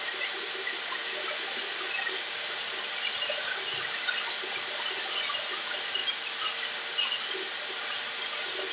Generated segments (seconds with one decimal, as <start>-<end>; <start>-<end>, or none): none